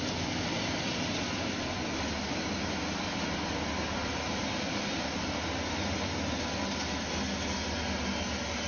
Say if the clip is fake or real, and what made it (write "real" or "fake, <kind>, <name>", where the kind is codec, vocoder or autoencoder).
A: real